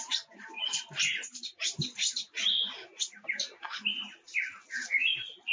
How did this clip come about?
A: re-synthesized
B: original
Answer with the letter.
B